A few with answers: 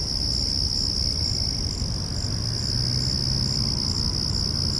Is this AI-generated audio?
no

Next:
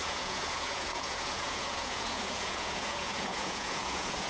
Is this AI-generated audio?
yes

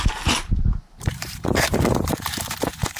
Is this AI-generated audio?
yes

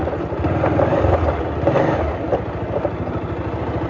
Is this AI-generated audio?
no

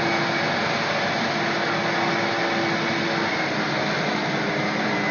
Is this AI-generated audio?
no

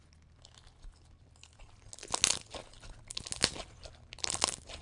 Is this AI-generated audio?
no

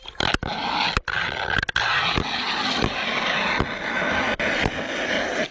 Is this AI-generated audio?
no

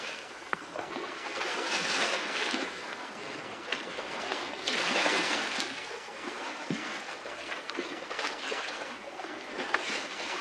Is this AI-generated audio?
yes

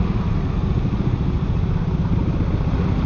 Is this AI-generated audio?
no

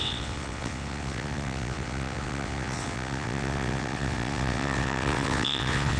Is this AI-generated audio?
yes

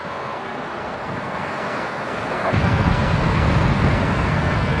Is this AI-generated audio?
yes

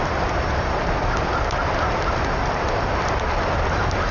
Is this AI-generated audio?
no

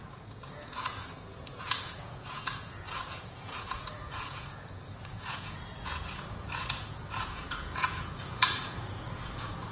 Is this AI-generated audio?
yes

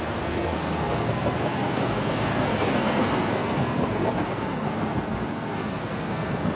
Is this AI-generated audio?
yes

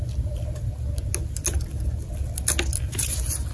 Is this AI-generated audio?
no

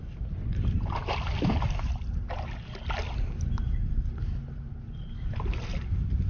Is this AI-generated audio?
no